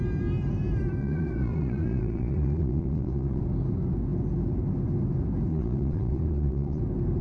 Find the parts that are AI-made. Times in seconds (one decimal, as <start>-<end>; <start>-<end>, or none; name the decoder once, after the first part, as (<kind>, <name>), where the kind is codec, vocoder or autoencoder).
1.0-3.4 (vocoder, Vocos); 5.5-6.8